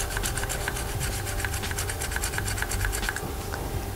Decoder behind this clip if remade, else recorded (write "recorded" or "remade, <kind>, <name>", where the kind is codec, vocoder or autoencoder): recorded